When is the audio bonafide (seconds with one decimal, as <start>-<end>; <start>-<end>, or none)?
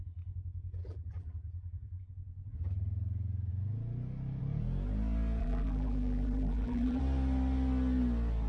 0.0-0.8; 2.0-5.4; 7.0-8.5